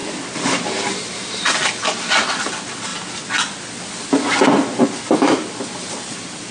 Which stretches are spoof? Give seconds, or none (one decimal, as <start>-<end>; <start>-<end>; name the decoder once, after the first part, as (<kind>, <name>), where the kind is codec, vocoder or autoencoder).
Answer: none